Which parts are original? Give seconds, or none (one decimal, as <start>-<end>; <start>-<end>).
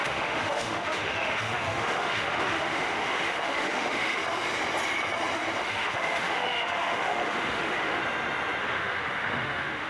4.2-5.6; 8.0-8.6